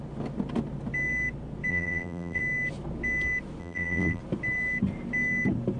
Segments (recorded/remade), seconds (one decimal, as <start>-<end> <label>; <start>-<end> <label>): 0.0-1.7 recorded; 1.7-2.4 remade; 2.4-3.6 recorded; 3.6-4.2 remade; 4.2-5.8 recorded